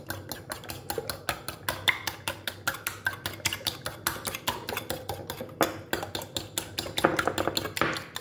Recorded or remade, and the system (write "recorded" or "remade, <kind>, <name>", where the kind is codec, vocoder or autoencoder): recorded